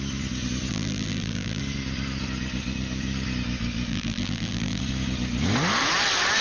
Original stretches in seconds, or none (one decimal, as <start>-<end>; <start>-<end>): 0.0-0.7; 1.6-3.9; 4.8-6.4